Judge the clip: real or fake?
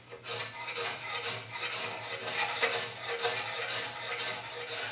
real